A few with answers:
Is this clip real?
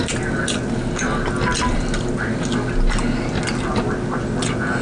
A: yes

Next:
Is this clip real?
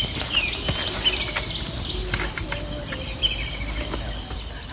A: yes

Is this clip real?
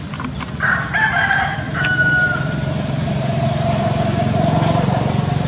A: yes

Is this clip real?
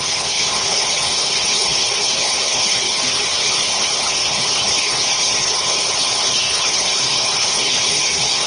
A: no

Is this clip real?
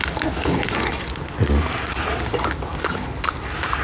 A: yes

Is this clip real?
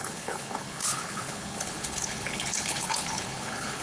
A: no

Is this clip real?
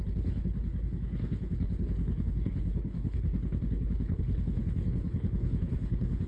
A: no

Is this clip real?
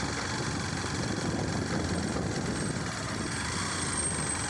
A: yes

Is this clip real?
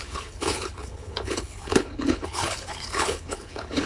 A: no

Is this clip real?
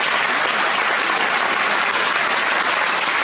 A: yes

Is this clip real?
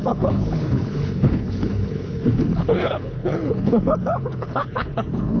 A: no